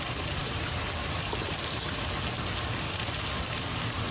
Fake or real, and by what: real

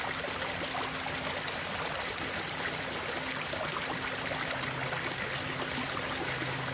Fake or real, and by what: real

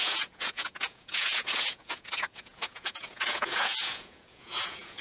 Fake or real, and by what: fake, vocoder, Vocos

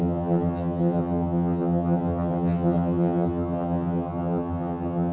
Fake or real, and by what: fake, vocoder, HiFi-GAN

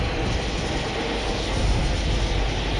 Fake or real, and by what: real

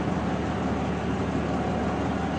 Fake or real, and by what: real